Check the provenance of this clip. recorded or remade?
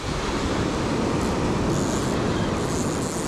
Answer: recorded